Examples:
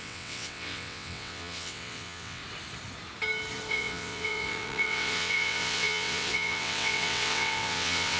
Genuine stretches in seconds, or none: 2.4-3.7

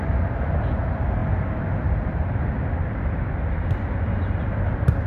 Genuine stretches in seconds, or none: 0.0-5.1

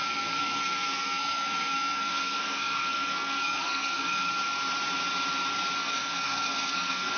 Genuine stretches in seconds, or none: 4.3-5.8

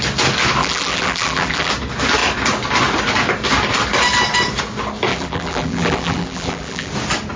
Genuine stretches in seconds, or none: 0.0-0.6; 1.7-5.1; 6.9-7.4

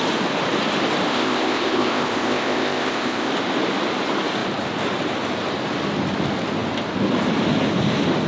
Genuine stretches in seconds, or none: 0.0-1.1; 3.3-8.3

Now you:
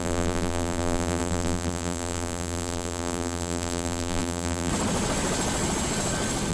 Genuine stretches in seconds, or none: 4.7-6.5

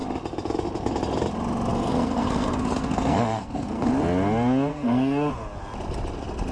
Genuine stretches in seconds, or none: 0.0-1.7; 3.9-4.7; 5.3-6.5

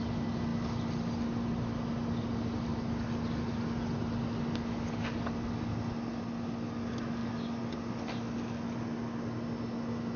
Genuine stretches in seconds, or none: 0.0-10.2